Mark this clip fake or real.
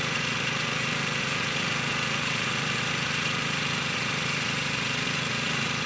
fake